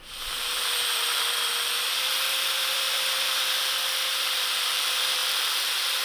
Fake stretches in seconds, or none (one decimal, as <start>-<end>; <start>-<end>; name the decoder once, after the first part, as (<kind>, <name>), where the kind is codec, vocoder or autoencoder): 0.0-6.0 (vocoder, BigVGAN v2)